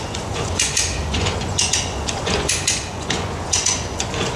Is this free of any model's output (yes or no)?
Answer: no